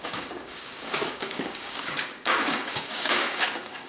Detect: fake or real fake